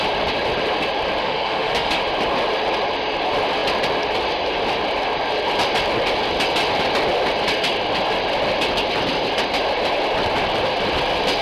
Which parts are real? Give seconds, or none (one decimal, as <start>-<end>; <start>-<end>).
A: 0.0-1.2; 2.0-11.4